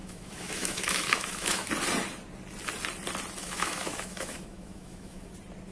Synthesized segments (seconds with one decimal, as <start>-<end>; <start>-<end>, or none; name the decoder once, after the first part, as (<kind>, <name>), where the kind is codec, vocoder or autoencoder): 0.0-1.7 (autoencoder, DAC-VAE); 3.4-5.3